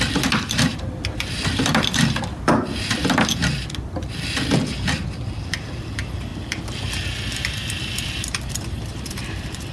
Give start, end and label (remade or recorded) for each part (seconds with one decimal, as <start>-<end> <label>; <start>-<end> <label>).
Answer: 0.0-3.4 remade; 3.4-4.0 recorded; 4.0-6.3 remade; 6.3-7.3 recorded; 7.3-9.7 remade